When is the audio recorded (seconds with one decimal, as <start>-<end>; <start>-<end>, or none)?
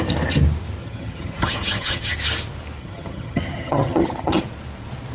0.0-0.8; 2.1-2.8; 4.4-5.1